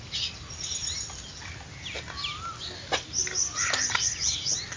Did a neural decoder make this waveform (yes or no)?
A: no